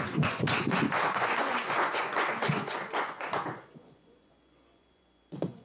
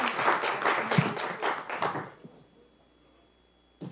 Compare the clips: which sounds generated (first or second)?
first